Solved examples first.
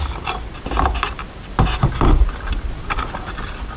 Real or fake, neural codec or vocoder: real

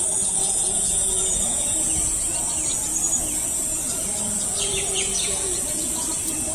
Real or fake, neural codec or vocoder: fake, vocoder, Vocos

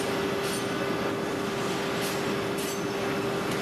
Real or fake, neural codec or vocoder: real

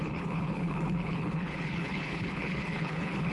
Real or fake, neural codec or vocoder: fake, codec, HILCodec